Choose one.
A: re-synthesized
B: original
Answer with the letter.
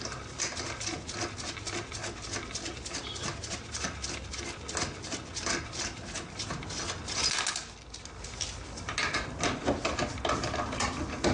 B